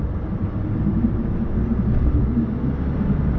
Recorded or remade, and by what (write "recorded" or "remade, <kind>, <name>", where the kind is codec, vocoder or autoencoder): recorded